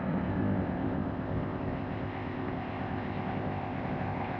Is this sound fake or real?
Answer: fake